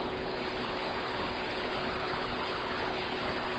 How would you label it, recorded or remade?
remade